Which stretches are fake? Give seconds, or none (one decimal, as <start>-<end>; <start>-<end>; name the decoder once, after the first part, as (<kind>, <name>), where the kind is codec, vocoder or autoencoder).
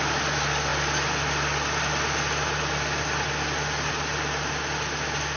none